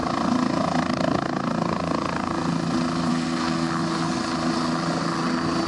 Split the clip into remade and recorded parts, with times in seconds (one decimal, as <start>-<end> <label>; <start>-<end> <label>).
0.0-3.1 recorded; 3.1-3.7 remade; 3.7-5.7 recorded